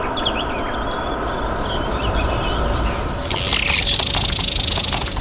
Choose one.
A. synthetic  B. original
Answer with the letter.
B